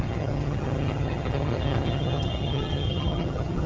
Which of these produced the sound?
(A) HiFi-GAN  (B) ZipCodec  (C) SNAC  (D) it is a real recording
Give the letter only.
A